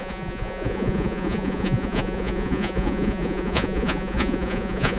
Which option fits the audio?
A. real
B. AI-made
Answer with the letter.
B